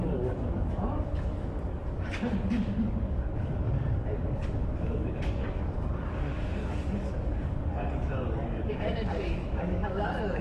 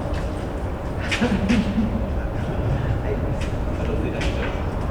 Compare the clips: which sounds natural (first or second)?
second